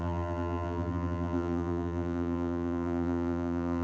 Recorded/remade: remade